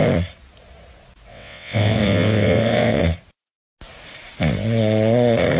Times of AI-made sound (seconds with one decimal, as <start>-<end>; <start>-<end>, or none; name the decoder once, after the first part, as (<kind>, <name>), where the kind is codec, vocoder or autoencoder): 1.3-3.0 (vocoder, WaveNeXt)